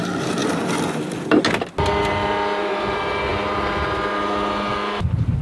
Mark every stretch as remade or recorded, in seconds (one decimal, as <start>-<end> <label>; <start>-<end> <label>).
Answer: 0.0-5.4 recorded